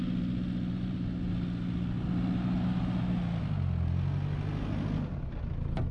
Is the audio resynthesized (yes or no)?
no